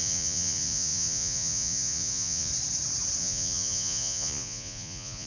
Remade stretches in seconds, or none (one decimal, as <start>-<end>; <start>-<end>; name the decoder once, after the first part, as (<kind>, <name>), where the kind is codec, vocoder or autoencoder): 0.0-2.5 (vocoder, Vocos); 3.2-5.3

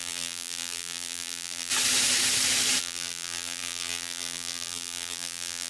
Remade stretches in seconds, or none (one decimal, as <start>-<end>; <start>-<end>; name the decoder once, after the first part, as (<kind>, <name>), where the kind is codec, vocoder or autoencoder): 0.0-1.7 (vocoder, BigVGAN v2); 2.8-5.7

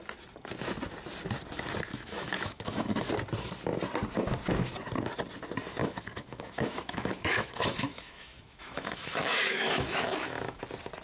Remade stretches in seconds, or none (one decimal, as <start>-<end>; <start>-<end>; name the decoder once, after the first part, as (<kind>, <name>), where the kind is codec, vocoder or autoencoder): 1.9-3.1 (autoencoder, DAC-VAE); 5.8-10.6